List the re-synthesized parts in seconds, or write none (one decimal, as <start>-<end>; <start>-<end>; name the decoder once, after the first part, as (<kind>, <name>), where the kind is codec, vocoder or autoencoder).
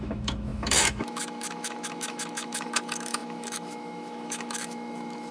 0.0-5.3 (autoencoder, DAC-VAE)